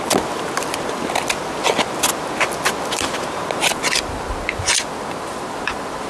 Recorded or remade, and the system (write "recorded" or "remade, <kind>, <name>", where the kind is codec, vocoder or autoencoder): recorded